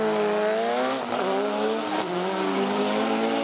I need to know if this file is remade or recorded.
recorded